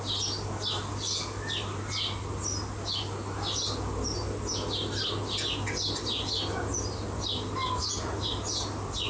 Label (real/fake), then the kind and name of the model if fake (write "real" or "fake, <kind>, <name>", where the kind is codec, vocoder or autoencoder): real